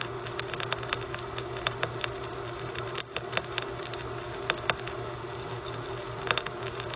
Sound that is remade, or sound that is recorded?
recorded